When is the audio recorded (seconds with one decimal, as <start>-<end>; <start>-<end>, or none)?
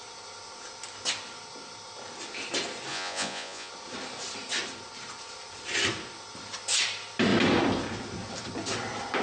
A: 0.0-2.9; 3.7-9.2